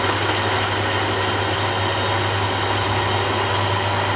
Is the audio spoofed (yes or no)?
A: no